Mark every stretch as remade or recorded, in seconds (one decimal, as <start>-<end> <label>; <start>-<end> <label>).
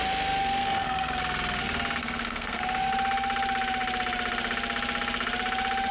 0.0-0.6 recorded; 0.6-1.2 remade; 1.2-2.0 recorded; 2.0-2.6 remade; 2.6-5.9 recorded